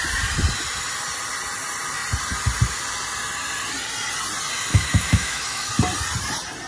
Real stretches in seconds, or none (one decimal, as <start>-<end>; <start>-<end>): 0.0-4.7; 5.7-6.7